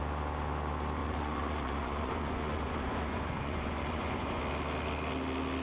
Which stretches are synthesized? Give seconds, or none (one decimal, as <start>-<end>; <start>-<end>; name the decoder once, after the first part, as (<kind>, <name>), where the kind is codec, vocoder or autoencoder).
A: 1.0-4.4 (vocoder, Vocos)